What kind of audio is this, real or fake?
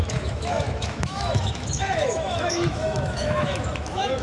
fake